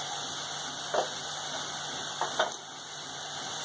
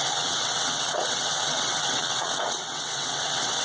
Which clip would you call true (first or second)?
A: first